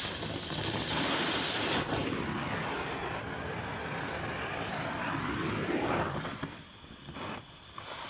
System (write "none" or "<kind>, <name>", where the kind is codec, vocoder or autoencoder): none